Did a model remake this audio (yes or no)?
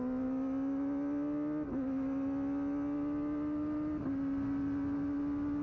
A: no